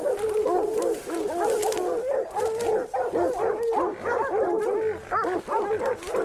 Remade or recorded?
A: recorded